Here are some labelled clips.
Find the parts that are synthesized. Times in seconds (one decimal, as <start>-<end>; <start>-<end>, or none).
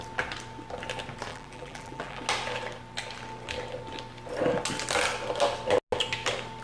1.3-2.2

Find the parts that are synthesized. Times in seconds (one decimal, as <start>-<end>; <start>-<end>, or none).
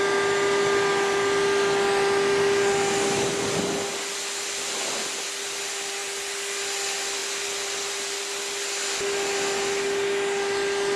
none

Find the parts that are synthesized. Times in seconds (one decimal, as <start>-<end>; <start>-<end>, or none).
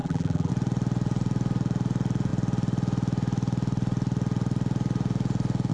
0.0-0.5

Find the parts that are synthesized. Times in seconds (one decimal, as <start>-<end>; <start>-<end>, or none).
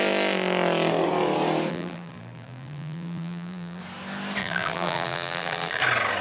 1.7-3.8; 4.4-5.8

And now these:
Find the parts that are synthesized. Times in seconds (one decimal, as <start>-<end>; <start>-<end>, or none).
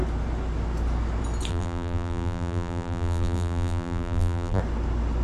1.5-4.6